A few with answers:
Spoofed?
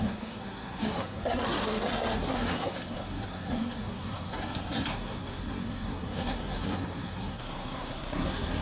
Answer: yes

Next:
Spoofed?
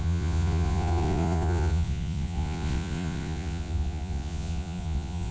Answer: yes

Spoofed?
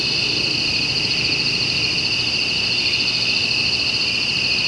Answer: no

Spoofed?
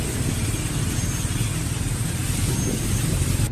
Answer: no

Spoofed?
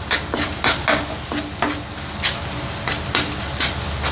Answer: no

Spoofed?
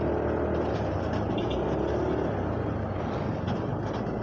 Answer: no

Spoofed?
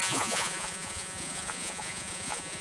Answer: yes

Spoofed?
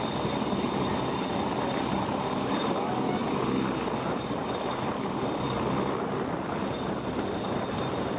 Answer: no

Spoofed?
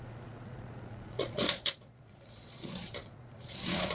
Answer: yes